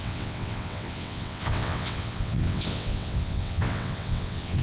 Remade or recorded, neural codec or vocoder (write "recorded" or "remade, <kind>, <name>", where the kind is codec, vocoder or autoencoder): remade, vocoder, WaveNeXt